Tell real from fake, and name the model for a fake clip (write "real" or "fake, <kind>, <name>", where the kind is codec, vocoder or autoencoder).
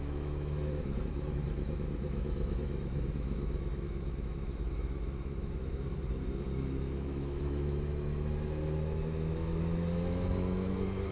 fake, autoencoder, DAC-VAE